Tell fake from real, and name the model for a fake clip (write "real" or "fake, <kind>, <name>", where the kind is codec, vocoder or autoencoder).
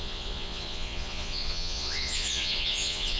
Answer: fake, vocoder, Vocos